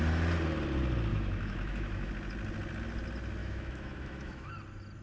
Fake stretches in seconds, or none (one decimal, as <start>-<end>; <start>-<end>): 1.1-2.1; 3.4-4.5